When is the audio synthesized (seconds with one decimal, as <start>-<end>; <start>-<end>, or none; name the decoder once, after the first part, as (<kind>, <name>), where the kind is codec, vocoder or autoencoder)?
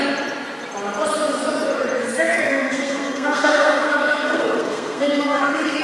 2.0-5.8 (codec, SNAC)